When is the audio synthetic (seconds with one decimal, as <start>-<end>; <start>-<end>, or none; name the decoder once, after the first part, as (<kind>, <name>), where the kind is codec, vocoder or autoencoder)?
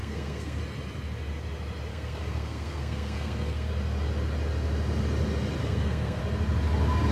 0.0-0.6 (codec, SNAC); 1.9-3.7; 5.6-6.2